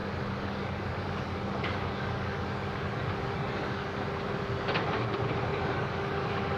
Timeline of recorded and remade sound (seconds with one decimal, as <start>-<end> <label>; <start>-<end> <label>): 0.0-4.0 remade; 4.0-5.5 recorded; 5.5-6.6 remade